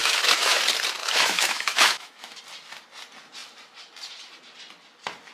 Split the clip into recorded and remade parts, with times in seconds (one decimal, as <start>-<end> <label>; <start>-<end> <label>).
0.0-0.6 remade; 0.6-1.0 recorded; 1.0-2.4 remade; 2.4-5.3 recorded